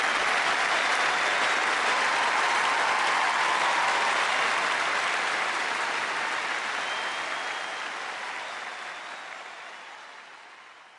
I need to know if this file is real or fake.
real